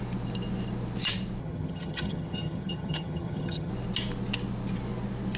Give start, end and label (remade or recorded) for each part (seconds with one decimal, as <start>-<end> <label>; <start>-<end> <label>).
0.0-1.4 recorded; 1.4-3.7 remade; 3.7-5.4 recorded